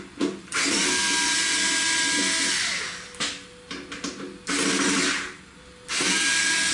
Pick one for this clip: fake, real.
real